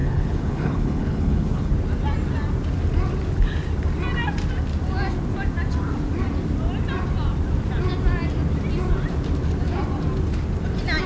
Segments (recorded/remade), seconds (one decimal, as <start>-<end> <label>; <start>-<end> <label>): 0.0-1.7 remade; 1.7-11.1 recorded